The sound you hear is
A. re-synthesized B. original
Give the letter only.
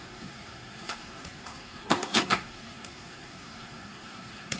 A